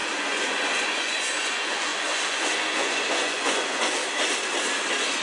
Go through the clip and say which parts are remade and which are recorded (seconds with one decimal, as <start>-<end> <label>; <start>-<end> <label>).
0.0-4.0 remade; 4.0-5.2 recorded